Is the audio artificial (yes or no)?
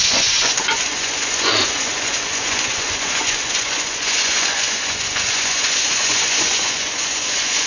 yes